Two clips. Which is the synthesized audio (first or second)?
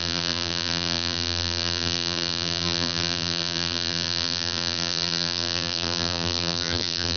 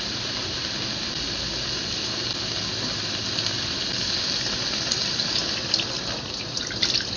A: first